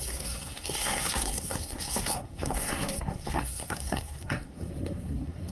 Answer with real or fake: fake